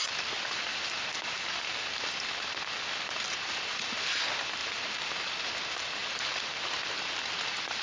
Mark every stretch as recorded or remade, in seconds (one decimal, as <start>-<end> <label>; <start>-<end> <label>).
0.0-4.6 recorded; 4.6-5.5 remade; 5.5-7.8 recorded